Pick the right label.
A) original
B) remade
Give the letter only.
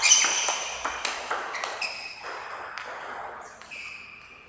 A